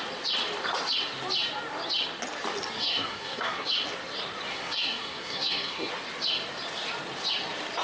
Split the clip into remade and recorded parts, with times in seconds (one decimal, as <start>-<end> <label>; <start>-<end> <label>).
0.0-2.8 recorded; 2.8-3.7 remade; 3.7-4.5 recorded; 4.5-5.9 remade; 5.9-7.8 recorded